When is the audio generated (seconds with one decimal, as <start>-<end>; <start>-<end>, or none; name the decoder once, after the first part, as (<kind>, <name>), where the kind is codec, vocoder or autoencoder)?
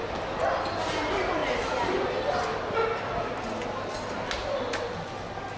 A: none